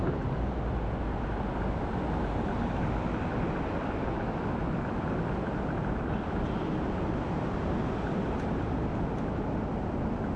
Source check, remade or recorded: recorded